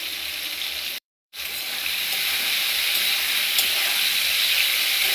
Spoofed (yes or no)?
yes